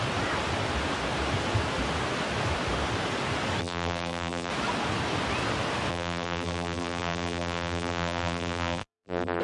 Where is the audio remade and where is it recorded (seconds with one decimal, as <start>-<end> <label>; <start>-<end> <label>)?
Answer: 0.0-3.6 recorded; 3.6-4.5 remade; 4.5-5.9 recorded; 5.9-9.4 remade

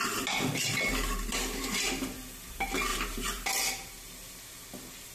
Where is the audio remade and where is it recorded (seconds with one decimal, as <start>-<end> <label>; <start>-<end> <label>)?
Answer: 0.0-2.9 recorded; 2.9-3.5 remade; 3.5-5.1 recorded

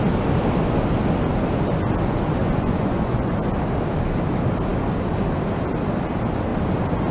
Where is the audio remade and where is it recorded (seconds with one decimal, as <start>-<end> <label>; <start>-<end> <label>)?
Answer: 0.0-2.4 recorded; 2.4-3.3 remade; 3.3-7.1 recorded

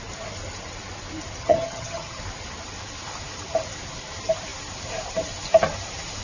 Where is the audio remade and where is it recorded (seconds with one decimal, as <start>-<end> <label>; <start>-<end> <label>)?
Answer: 0.0-1.4 recorded; 1.4-2.2 remade; 2.2-6.2 recorded